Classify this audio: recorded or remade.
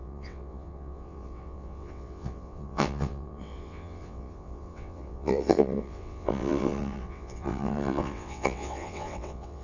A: remade